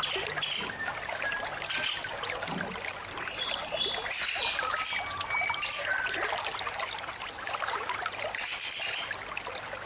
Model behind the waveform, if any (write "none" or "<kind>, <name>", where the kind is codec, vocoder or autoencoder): none